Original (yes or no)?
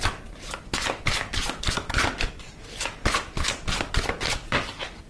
yes